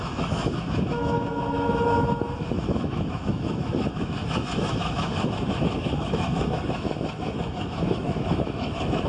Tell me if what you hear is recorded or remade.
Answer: remade